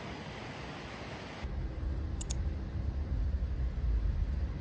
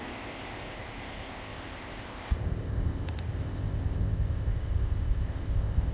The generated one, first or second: second